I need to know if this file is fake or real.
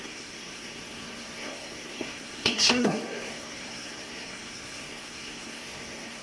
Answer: fake